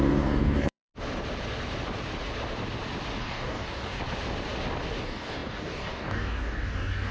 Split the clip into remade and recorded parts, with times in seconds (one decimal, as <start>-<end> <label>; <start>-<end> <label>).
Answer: 0.0-0.9 remade; 0.9-3.2 recorded; 3.2-4.0 remade; 4.0-5.0 recorded; 5.0-7.1 remade